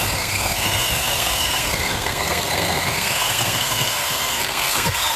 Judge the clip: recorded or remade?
remade